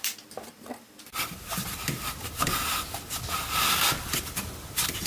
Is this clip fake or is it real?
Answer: fake